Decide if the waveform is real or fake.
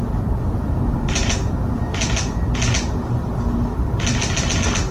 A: real